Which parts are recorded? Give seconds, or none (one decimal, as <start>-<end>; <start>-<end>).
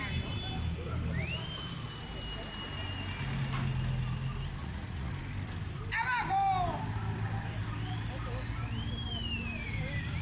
0.0-4.6; 5.1-10.2